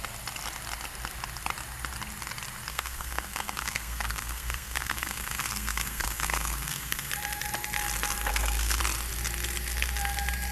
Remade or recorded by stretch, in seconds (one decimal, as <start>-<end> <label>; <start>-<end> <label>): 0.0-2.7 recorded; 2.7-7.1 remade; 7.1-8.3 recorded; 8.3-8.8 remade; 8.8-10.5 recorded